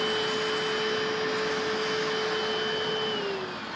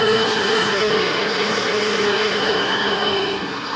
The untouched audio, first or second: first